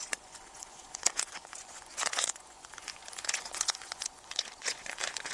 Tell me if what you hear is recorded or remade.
remade